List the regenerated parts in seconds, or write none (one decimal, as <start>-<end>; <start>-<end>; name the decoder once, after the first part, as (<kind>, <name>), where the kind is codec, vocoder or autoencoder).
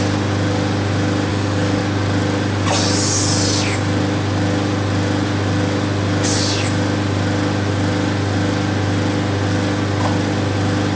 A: 1.3-1.8 (codec, DAC)